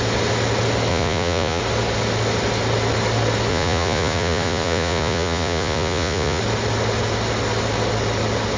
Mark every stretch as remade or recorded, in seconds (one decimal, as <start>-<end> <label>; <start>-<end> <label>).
0.0-0.9 recorded; 0.9-1.6 remade; 1.6-3.5 recorded; 3.5-6.4 remade; 6.4-8.6 recorded